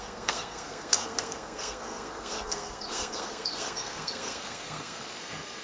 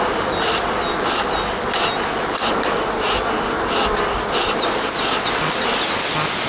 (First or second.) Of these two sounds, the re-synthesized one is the first